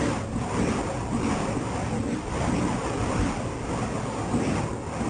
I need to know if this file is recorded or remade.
recorded